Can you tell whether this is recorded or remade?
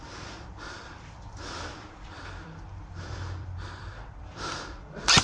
remade